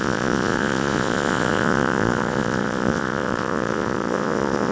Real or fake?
fake